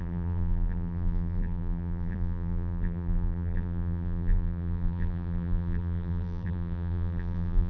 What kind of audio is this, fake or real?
fake